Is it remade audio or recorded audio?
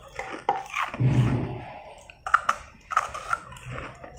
recorded